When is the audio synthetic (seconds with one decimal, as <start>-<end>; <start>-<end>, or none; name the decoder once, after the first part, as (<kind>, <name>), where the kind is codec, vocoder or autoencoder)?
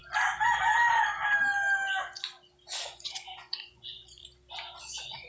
2.8-4.2 (vocoder, Vocos); 4.8-5.3